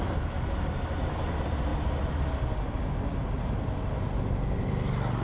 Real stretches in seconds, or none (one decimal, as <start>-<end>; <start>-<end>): 0.0-5.2